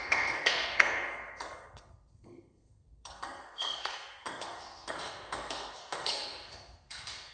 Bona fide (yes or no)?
no